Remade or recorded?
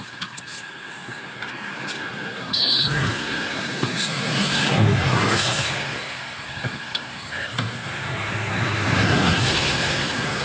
remade